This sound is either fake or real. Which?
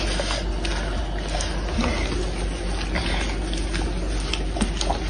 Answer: real